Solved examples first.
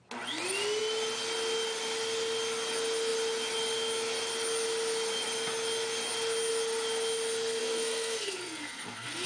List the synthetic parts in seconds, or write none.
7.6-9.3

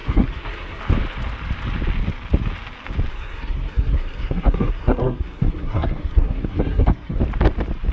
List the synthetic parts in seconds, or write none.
0.0-0.8; 3.1-7.2

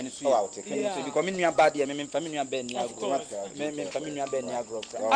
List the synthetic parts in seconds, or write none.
none

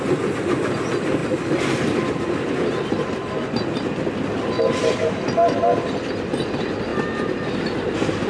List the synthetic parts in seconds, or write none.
none

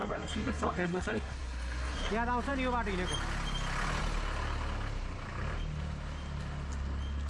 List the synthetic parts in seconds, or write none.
0.0-2.1

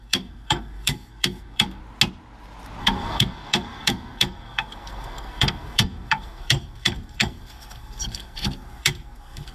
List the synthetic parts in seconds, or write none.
0.0-1.8; 2.8-9.5

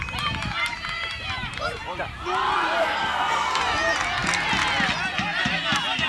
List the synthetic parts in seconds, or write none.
2.8-3.6